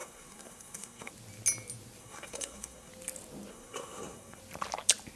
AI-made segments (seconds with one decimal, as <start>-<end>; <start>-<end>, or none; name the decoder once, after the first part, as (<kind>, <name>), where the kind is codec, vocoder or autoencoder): 0.0-1.1 (codec, SNAC); 2.0-2.9; 3.5-4.4